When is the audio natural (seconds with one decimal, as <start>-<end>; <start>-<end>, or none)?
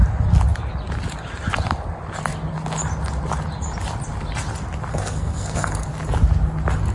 0.0-4.9; 5.9-6.9